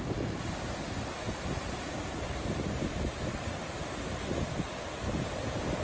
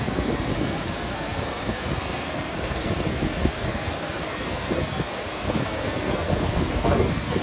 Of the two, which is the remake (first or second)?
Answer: second